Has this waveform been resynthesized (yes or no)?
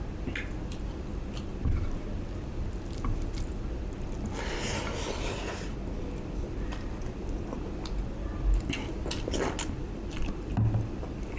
no